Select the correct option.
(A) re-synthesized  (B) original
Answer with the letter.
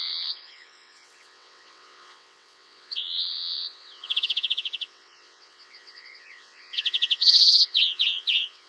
A